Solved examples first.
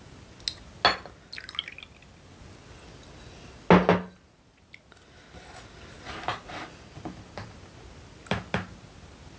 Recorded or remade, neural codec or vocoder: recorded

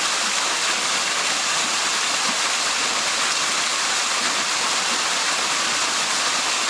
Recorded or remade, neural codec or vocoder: recorded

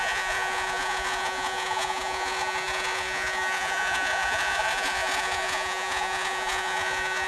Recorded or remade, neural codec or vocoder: remade, vocoder, Vocos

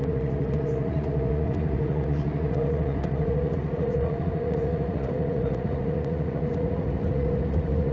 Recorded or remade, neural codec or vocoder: remade, vocoder, Vocos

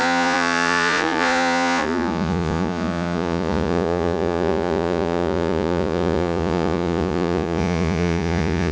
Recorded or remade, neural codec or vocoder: remade, vocoder, Vocos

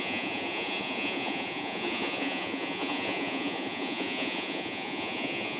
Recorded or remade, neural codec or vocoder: remade, vocoder, Vocos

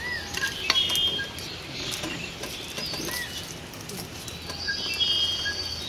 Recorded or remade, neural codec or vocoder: recorded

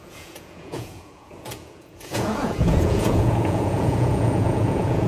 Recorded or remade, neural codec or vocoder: remade, vocoder, Vocos